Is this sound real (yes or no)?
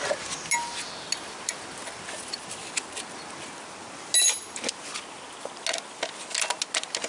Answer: yes